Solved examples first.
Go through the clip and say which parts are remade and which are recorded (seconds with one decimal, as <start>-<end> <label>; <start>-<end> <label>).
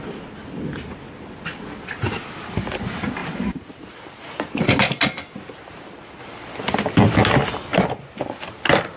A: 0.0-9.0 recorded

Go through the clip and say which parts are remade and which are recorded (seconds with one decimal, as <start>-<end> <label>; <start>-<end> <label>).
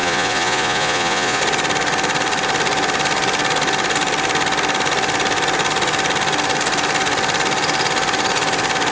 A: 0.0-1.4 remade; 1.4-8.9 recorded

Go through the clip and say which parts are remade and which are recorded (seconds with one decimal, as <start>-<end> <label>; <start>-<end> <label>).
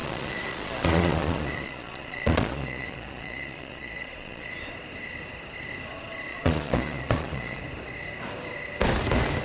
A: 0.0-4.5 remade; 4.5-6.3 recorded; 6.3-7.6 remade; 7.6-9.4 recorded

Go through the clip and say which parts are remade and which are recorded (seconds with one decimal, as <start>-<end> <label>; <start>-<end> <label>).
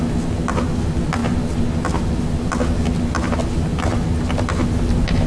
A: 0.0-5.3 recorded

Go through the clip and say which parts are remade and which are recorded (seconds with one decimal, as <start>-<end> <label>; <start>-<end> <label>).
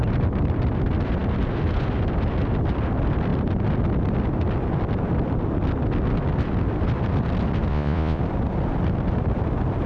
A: 0.0-7.7 recorded; 7.7-8.2 remade; 8.2-9.9 recorded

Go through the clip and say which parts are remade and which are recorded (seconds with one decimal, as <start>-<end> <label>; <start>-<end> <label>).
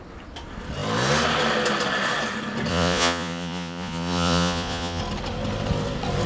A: 0.0-2.7 recorded; 2.7-5.0 remade; 5.0-6.3 recorded